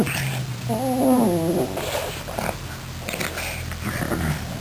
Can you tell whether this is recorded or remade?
recorded